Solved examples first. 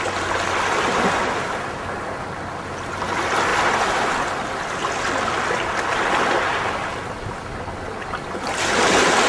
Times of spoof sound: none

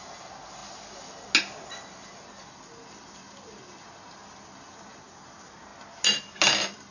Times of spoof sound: none

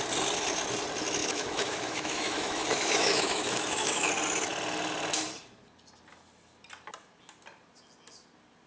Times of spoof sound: 1.2-4.1 (autoencoder, DAC-VAE)